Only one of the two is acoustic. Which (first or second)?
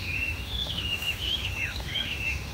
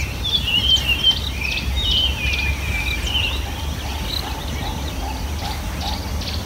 second